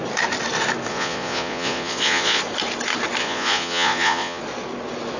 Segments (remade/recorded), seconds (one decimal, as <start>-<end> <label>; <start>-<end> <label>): 0.0-0.9 recorded; 0.9-2.4 remade; 2.4-3.2 recorded; 3.2-4.4 remade; 4.4-5.2 recorded